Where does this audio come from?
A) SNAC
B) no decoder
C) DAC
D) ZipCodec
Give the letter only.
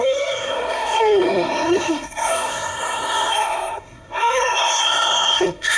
A